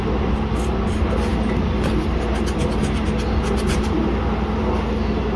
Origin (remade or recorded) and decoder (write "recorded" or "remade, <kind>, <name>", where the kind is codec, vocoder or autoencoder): recorded